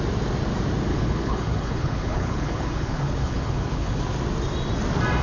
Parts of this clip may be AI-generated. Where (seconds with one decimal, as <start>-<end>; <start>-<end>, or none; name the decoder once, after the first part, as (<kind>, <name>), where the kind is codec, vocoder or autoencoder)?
0.9-4.0 (codec, HILCodec)